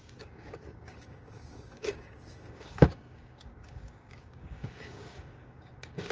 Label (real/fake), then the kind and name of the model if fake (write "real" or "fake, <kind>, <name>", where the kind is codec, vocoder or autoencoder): fake, codec, DAC